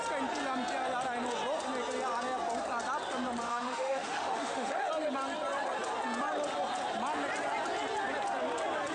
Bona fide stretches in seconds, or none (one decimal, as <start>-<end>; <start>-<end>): 0.0-3.5; 4.9-8.9